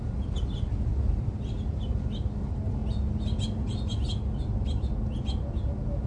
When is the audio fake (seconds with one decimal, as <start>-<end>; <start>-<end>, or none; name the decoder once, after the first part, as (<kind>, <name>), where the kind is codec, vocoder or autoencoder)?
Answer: none